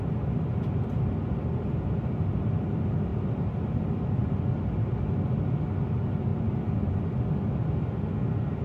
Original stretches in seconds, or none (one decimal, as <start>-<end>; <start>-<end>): 0.0-6.3; 7.5-8.6